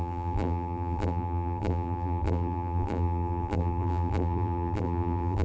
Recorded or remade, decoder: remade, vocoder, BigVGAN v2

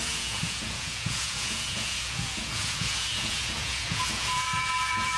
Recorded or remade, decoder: remade, vocoder, Vocos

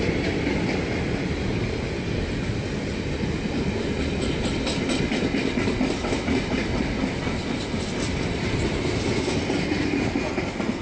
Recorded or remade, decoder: recorded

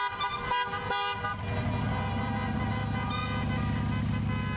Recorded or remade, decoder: recorded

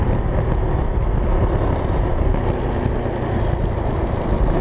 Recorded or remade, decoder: recorded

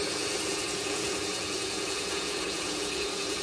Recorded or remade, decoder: remade, vocoder, Vocos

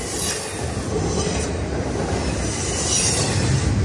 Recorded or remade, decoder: recorded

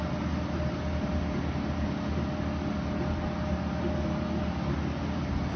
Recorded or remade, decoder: recorded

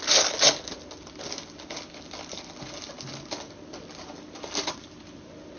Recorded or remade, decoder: recorded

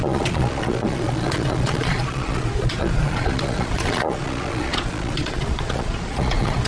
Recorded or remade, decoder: remade, vocoder, Vocos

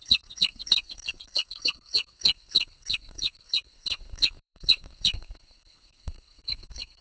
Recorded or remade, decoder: remade, codec, SNAC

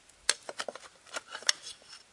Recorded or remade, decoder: recorded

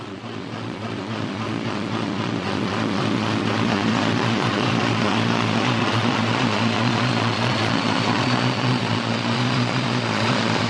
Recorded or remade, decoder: remade, vocoder, Vocos